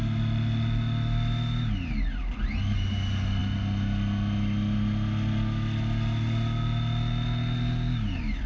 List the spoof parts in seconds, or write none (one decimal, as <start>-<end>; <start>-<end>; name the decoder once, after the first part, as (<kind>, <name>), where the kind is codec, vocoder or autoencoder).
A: none